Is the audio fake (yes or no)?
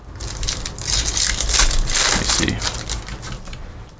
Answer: no